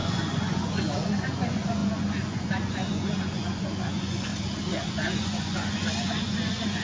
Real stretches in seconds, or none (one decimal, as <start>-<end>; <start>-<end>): 4.3-4.9